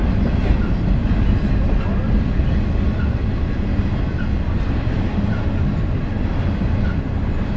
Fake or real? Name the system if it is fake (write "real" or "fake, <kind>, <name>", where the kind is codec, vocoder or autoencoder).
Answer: real